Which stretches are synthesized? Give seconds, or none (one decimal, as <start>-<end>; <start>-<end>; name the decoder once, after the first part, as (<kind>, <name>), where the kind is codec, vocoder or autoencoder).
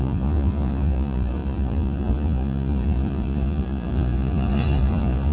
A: 0.0-5.3 (vocoder, Vocos)